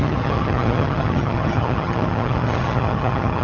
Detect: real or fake fake